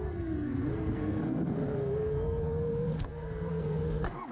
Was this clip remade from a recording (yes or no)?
yes